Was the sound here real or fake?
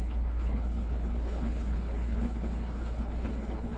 fake